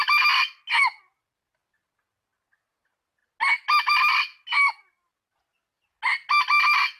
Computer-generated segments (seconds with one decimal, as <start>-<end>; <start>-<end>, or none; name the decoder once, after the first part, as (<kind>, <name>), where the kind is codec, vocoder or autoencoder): none